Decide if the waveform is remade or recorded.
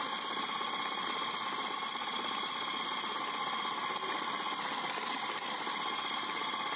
recorded